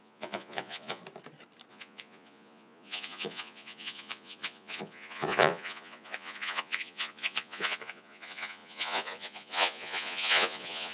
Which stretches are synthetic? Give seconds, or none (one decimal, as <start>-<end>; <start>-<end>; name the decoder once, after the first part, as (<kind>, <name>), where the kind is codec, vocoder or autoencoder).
0.0-1.0 (vocoder, Vocos); 1.7-10.9